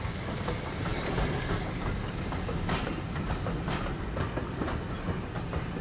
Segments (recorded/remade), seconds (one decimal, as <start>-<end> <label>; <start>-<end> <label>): 0.0-5.8 recorded